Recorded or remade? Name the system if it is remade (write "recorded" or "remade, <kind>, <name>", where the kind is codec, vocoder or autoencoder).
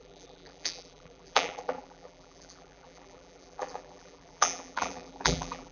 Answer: remade, vocoder, BigVGAN v2